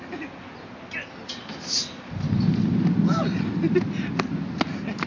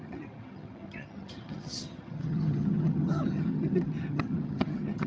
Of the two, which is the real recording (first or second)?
first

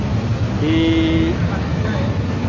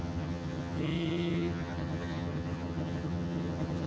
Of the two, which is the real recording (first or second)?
first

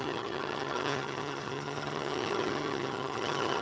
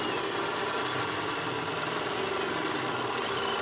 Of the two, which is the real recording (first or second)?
second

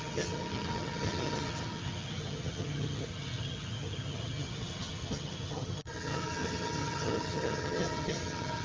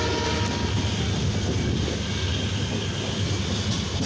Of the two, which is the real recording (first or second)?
second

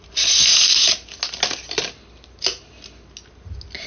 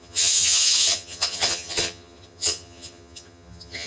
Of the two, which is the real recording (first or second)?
first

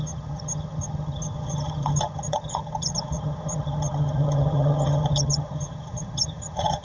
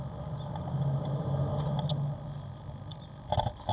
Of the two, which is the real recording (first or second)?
second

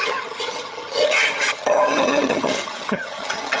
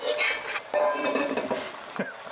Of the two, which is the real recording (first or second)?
second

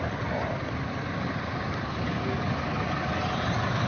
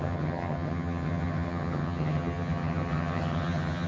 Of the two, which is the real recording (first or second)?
first